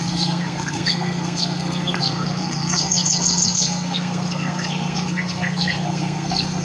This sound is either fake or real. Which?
fake